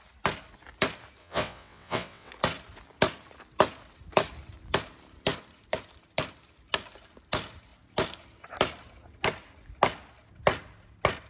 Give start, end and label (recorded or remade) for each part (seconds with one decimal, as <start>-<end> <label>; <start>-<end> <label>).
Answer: 0.0-1.2 recorded; 1.2-2.3 remade; 2.3-11.3 recorded